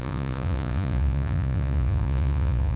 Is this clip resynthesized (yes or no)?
yes